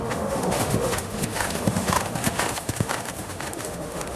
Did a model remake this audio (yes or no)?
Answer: yes